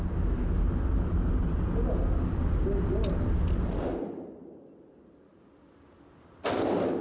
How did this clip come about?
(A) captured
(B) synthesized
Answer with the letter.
A